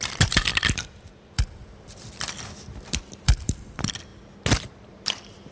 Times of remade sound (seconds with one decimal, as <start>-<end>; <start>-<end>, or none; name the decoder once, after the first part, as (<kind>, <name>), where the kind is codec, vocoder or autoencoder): 0.0-4.1 (vocoder, BigVGAN v2); 4.6-5.5